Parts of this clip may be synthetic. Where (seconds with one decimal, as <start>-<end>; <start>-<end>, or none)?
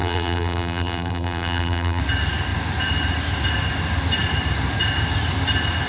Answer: 0.0-2.0